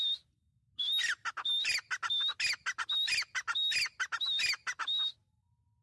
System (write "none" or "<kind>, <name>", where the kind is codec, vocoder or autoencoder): none